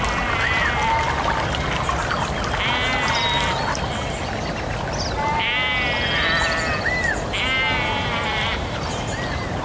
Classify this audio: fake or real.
real